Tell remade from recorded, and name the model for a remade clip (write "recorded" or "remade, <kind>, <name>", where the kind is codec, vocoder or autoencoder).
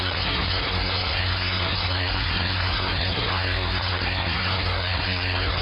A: remade, codec, SNAC